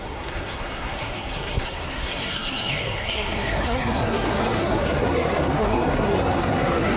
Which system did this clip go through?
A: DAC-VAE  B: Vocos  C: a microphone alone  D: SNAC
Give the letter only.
D